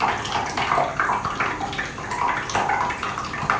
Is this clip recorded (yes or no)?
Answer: yes